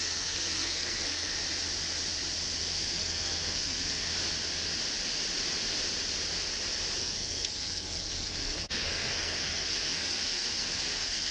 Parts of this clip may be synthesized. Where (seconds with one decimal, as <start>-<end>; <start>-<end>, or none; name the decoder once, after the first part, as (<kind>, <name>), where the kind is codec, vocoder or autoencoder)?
0.0-1.3 (codec, SNAC); 2.6-4.1; 7.0-11.3

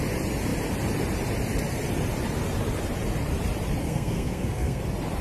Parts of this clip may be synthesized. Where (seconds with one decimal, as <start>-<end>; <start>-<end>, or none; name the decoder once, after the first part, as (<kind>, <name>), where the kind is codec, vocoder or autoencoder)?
3.8-4.8 (codec, SNAC)

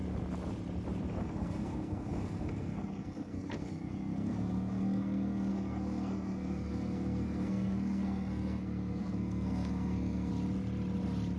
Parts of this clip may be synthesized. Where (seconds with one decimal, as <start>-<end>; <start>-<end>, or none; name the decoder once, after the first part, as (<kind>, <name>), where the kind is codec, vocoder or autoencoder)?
1.2-10.3 (codec, SNAC)

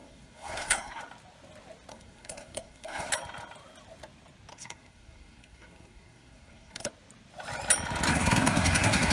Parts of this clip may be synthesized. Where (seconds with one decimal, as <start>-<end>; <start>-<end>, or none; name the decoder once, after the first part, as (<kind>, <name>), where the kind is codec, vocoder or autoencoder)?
0.0-1.0 (codec, SNAC); 1.9-3.1; 4.5-6.9; 8.1-9.1